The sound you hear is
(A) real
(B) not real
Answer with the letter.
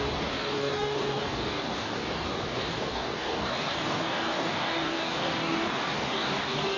B